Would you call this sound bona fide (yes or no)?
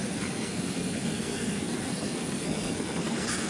no